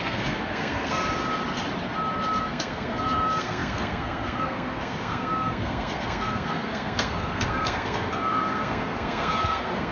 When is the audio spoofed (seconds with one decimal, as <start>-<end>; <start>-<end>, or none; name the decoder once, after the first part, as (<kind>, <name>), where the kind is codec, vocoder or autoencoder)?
0.0-1.0 (codec, SNAC); 2.4-9.9